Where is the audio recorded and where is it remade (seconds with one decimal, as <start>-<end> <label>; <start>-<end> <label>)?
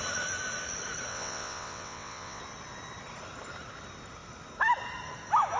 0.0-1.1 recorded; 1.1-2.4 remade; 2.4-5.6 recorded